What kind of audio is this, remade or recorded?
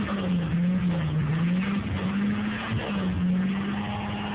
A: recorded